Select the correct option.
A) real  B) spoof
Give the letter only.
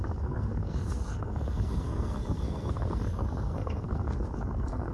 B